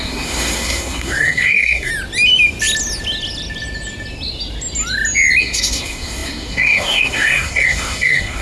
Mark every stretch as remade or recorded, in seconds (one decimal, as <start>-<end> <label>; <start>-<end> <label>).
0.0-1.9 remade; 1.9-5.4 recorded; 5.4-8.4 remade